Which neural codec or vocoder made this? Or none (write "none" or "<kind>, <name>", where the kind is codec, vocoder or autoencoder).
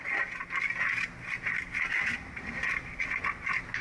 none